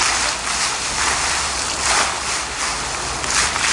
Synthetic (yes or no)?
no